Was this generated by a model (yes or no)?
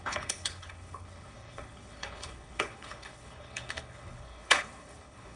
yes